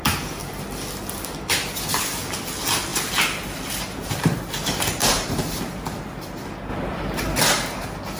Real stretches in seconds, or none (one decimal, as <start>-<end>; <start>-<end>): 0.0-2.9; 5.6-8.2